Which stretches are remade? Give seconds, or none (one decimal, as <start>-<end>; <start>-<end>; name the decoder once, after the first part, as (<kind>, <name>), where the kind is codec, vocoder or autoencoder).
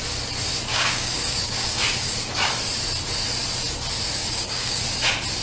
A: 0.7-2.5 (codec, DAC); 4.2-4.8